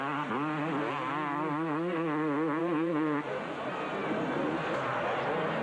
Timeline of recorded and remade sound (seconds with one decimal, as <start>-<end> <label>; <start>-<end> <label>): 0.0-2.6 recorded; 2.6-3.6 remade; 3.6-5.6 recorded